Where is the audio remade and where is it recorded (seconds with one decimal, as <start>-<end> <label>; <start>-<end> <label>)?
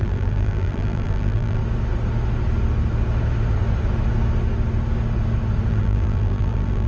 0.0-1.6 remade; 1.6-5.7 recorded; 5.7-6.9 remade